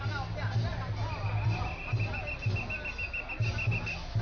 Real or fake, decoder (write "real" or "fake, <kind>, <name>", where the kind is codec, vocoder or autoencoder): real